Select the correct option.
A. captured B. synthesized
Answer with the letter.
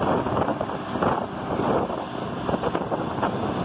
A